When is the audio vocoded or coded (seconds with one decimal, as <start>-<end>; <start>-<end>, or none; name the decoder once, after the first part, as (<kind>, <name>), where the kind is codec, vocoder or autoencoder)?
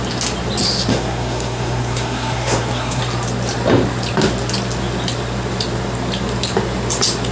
0.9-3.0 (codec, SNAC)